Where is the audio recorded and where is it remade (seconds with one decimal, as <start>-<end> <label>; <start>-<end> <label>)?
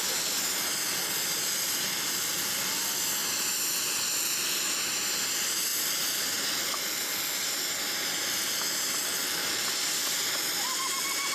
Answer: 0.0-11.3 recorded